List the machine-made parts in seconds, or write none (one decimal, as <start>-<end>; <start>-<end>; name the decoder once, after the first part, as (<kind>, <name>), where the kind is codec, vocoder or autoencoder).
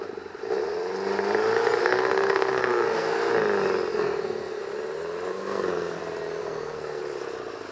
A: 1.8-3.3 (codec, SNAC); 3.9-4.6; 5.3-6.0; 6.4-7.0